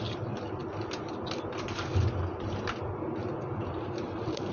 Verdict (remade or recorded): recorded